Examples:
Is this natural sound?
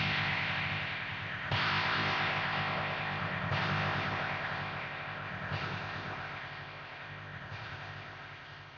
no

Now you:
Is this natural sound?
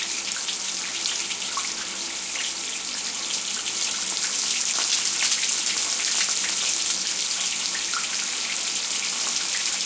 yes